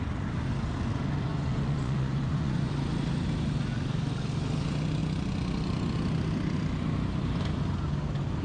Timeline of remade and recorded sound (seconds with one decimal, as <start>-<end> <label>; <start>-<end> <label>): 0.0-1.3 recorded; 1.3-2.7 remade; 2.7-8.4 recorded